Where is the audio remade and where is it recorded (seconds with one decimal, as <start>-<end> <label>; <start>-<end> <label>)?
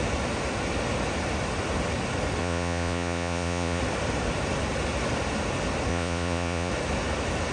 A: 0.0-2.4 recorded; 2.4-3.8 remade; 3.8-5.9 recorded; 5.9-6.7 remade; 6.7-7.5 recorded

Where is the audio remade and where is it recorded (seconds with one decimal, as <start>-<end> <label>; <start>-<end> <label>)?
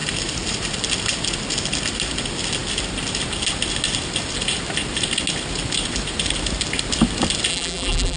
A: 0.0-7.5 recorded; 7.5-8.2 remade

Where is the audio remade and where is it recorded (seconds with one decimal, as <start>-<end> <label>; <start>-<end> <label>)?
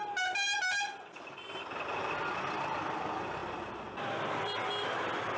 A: 0.0-5.4 recorded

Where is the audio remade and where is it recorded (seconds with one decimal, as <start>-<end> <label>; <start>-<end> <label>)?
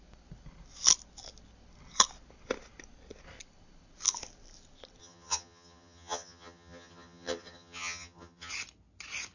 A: 0.0-5.0 recorded; 5.0-8.5 remade; 8.5-9.3 recorded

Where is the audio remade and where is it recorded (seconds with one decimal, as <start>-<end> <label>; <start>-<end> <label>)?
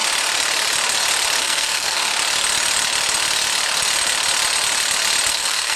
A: 0.0-1.4 recorded; 1.4-2.1 remade; 2.1-5.3 recorded; 5.3-5.8 remade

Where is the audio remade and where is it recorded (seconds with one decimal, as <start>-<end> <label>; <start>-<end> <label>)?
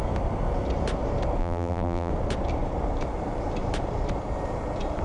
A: 0.0-1.4 recorded; 1.4-2.1 remade; 2.1-5.0 recorded